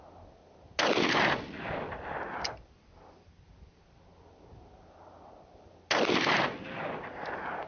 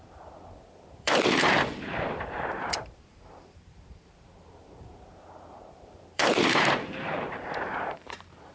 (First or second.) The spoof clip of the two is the second